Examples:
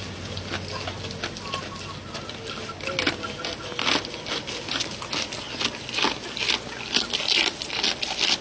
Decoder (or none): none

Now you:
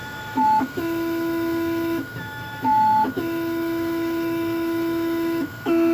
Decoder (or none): autoencoder, DAC-VAE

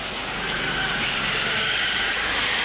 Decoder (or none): none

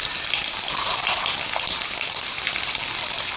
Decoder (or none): none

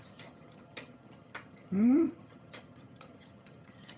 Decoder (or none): vocoder, HiFi-GAN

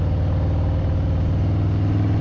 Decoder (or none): none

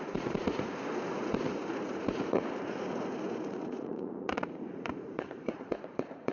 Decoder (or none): vocoder, Vocos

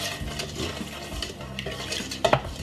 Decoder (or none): vocoder, BigVGAN v2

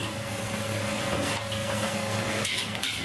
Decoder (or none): codec, SNAC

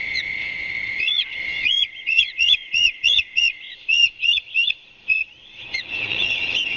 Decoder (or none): vocoder, Vocos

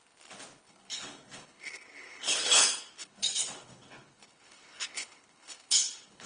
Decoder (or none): codec, HILCodec